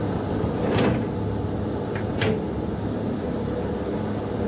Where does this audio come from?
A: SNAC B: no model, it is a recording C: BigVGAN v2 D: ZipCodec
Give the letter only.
B